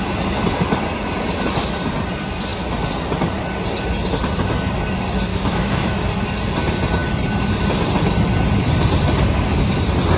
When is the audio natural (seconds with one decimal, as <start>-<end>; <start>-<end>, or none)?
0.0-5.3; 6.1-10.2